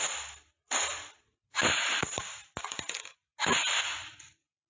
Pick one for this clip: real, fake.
real